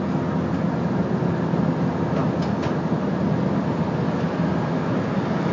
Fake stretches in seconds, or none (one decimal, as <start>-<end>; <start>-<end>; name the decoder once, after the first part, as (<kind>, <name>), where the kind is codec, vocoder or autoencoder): none